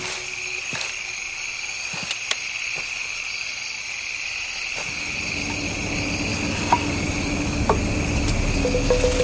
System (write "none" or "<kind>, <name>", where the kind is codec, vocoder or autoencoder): none